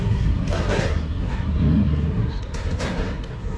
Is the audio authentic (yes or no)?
no